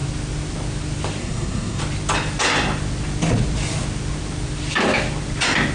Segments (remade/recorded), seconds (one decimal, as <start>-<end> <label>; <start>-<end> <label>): 0.0-1.2 recorded; 1.2-1.8 remade; 1.8-5.7 recorded